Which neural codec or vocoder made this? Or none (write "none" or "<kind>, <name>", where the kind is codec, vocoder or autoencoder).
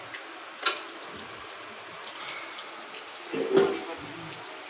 none